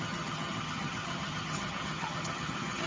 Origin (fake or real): fake